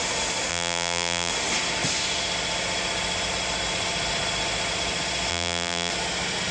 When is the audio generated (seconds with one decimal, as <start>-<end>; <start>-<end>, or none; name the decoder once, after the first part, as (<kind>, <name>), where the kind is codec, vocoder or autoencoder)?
0.5-1.3 (vocoder, BigVGAN v2); 5.3-5.9

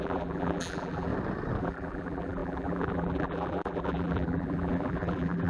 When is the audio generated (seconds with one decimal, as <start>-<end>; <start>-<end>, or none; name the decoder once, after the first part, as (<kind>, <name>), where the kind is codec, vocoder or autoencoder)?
0.0-1.1 (vocoder, BigVGAN v2); 1.6-5.5

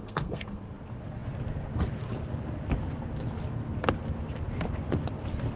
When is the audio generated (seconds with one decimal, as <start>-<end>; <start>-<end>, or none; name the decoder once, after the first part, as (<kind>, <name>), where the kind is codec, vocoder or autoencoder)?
0.0-0.6 (codec, SNAC)